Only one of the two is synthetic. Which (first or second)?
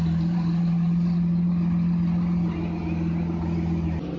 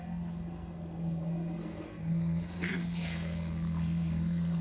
second